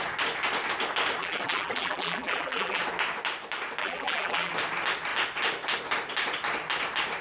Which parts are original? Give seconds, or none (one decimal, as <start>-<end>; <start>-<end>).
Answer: 0.0-1.2; 2.8-3.8; 4.5-7.2